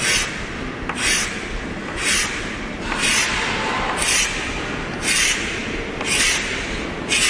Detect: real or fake real